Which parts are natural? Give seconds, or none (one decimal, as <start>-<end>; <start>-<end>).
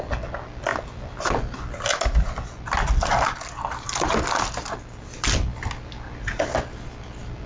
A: 0.0-7.5